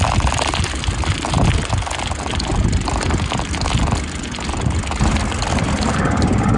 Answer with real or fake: real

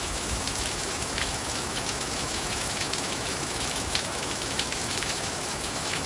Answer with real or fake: fake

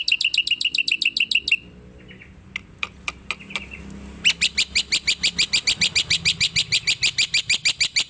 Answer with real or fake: real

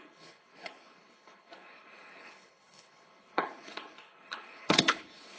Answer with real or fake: fake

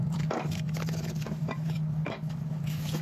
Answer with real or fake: fake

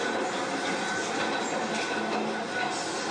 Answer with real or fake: real